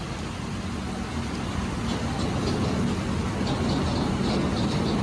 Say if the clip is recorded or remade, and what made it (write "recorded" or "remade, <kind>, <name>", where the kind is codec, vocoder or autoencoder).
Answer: recorded